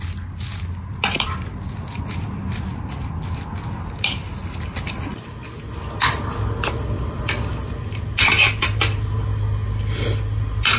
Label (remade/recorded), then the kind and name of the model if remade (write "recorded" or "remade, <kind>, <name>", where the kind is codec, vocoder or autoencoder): recorded